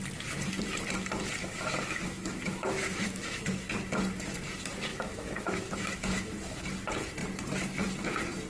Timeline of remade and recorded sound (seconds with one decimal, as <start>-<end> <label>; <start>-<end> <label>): 0.0-1.4 recorded; 1.4-3.7 remade; 3.7-4.9 recorded; 4.9-6.6 remade; 6.6-8.5 recorded